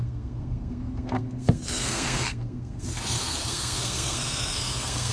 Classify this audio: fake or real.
fake